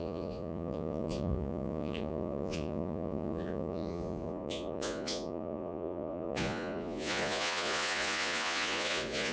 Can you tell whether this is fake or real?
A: fake